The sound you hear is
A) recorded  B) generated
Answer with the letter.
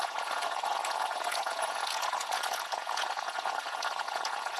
B